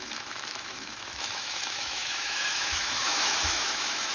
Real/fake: fake